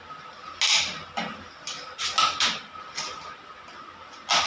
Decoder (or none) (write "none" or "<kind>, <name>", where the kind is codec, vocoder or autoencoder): none